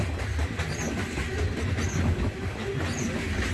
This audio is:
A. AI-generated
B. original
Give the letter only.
B